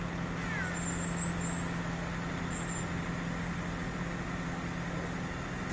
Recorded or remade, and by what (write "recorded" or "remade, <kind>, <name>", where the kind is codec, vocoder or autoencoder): recorded